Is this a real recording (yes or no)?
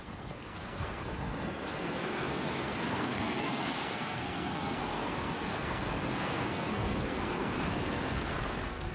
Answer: no